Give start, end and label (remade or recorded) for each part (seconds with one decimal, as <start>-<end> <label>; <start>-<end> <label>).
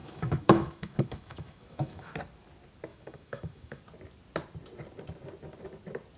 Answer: 0.0-2.1 remade; 2.1-2.9 recorded; 2.9-3.8 remade; 3.8-6.2 recorded